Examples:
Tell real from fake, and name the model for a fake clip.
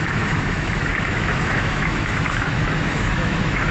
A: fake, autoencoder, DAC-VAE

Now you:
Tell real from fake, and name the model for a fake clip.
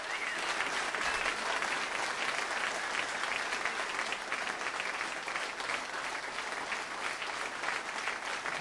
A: real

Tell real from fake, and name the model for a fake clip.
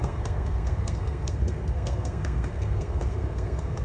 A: fake, codec, SNAC